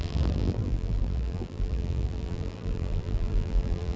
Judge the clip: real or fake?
fake